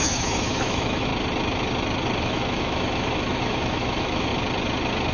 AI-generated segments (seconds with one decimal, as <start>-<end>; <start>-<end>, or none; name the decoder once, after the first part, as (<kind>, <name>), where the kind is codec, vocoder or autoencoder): 0.0-1.1 (autoencoder, DAC-VAE); 2.2-4.3